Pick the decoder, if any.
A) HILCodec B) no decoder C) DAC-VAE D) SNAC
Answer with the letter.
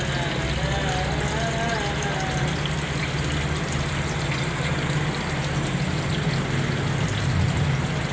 B